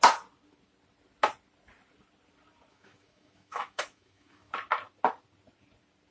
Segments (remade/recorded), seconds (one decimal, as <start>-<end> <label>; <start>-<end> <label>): 0.0-2.7 recorded; 2.7-4.5 remade; 4.5-6.1 recorded